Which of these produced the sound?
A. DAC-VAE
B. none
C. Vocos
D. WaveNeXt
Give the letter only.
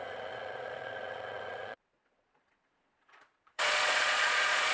C